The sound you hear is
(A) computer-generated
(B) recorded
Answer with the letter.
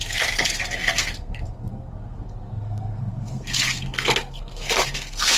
A